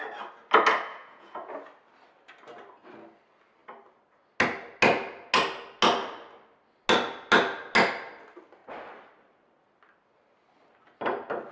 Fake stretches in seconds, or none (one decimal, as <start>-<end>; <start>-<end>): 0.9-1.5